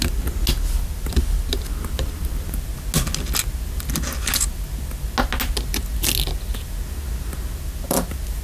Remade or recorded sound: recorded